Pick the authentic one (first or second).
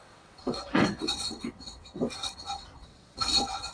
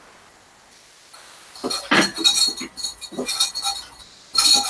second